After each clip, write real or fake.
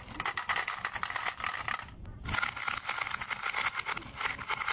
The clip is real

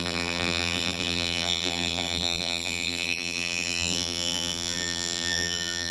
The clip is fake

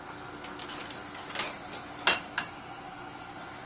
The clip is real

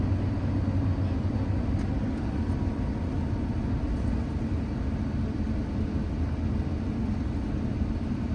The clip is real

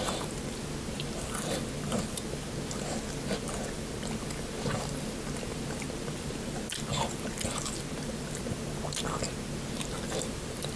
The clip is real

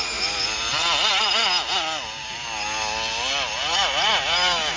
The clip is real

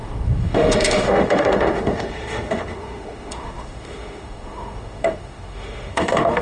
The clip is fake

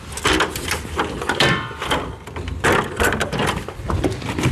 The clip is real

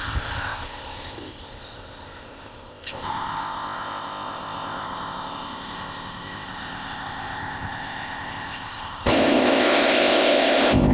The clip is fake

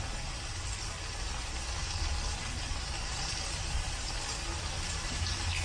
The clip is fake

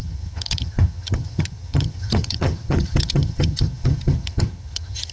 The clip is fake